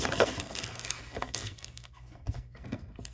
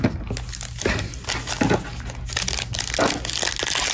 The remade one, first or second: first